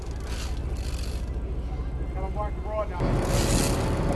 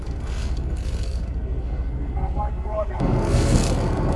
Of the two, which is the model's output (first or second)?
second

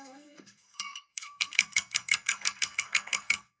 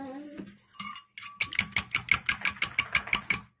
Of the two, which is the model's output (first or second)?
first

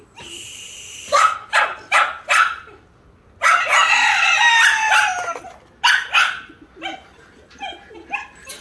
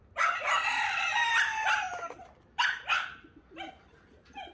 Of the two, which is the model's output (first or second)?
second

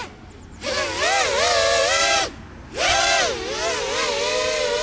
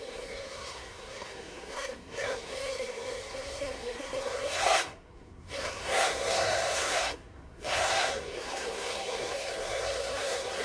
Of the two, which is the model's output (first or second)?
second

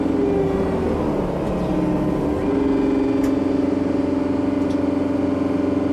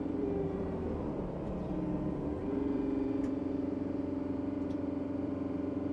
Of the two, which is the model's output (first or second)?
second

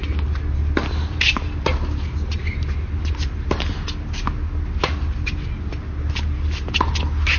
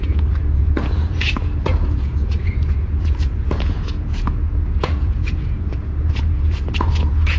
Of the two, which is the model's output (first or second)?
second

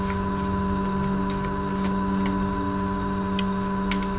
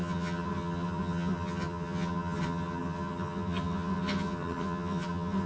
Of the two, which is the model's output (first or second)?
second